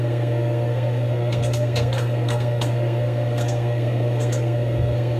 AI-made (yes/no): yes